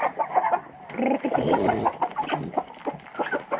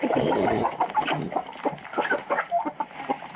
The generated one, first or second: second